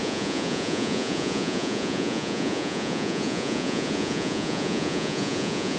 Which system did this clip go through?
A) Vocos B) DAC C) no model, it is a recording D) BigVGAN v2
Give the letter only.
A